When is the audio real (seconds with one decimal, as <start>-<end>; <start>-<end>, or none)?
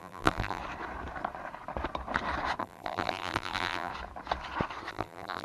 0.6-2.6; 3.9-4.9